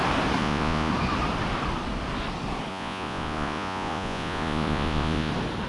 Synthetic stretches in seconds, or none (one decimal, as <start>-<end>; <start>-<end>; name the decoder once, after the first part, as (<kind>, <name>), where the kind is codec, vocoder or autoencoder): 0.4-0.9 (vocoder, Vocos); 2.7-5.3